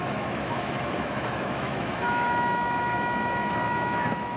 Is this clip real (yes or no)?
no